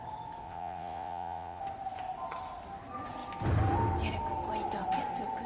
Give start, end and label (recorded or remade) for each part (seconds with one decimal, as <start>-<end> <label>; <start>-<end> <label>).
0.0-0.4 recorded; 0.4-1.6 remade; 1.6-5.5 recorded